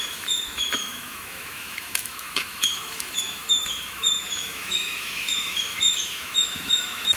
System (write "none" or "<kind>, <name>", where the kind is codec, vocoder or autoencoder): autoencoder, DAC-VAE